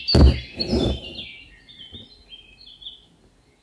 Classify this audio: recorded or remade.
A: recorded